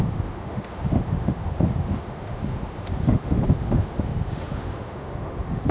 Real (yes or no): no